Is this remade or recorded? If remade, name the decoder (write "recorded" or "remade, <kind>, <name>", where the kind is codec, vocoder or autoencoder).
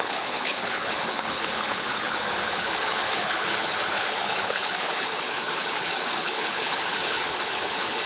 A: remade, codec, HILCodec